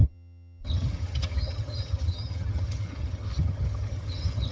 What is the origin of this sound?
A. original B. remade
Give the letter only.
B